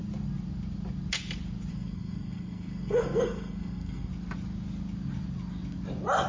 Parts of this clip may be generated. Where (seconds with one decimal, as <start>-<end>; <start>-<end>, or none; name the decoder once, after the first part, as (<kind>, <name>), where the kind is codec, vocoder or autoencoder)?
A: 1.7-4.1 (codec, SNAC)